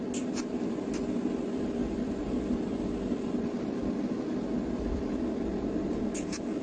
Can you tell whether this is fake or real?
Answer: real